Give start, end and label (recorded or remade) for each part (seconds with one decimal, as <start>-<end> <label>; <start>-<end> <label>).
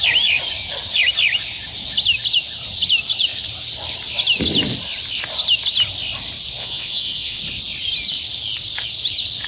0.0-6.6 recorded; 6.6-7.4 remade; 7.4-9.5 recorded